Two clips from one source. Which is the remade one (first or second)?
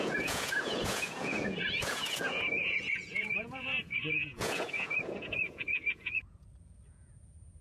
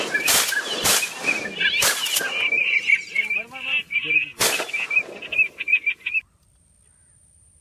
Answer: first